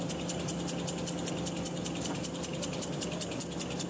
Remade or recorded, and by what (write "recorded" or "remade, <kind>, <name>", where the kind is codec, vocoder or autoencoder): recorded